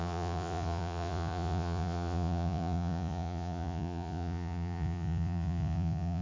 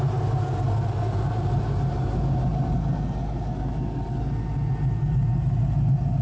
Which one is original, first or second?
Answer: second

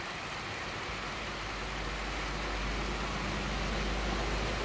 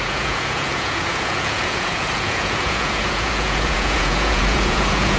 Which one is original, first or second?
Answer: first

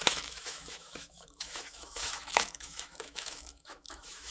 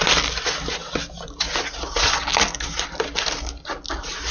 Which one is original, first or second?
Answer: second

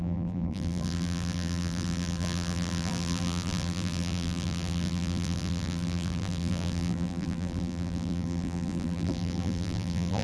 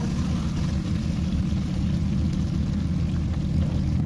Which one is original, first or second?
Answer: second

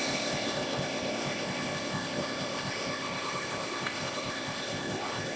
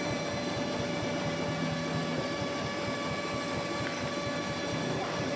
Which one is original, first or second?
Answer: second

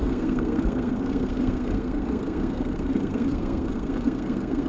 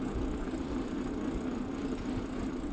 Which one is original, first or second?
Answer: second